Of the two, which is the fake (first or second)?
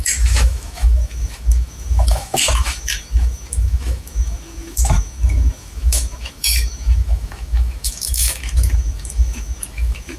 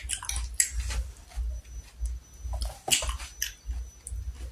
first